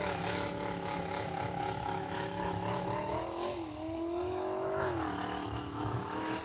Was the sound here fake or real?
fake